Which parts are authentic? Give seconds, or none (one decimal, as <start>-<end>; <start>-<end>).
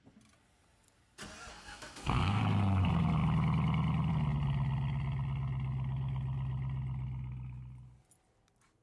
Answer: 0.0-1.5; 2.4-8.8